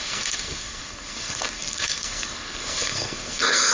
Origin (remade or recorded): remade